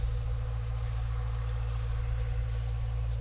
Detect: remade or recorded recorded